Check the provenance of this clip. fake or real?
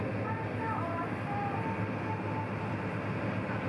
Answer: real